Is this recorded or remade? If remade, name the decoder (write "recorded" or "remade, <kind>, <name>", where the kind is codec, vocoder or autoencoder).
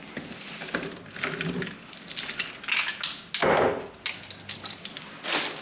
recorded